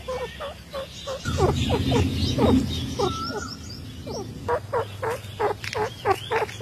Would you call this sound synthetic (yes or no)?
no